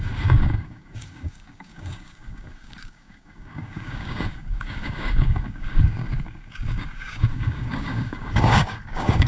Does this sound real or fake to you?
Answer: fake